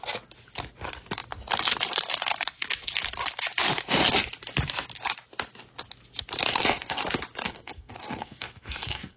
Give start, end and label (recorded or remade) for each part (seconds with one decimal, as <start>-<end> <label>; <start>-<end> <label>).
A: 0.0-6.5 recorded; 6.5-7.0 remade; 7.0-7.4 recorded; 7.4-9.2 remade